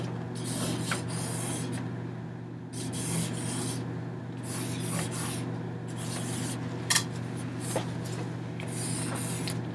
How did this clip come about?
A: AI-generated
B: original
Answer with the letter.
B